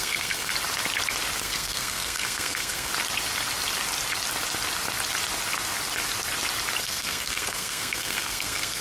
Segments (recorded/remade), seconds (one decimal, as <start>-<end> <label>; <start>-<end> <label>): 0.0-0.5 remade; 0.5-1.4 recorded; 1.4-2.9 remade; 2.9-6.8 recorded; 6.8-8.8 remade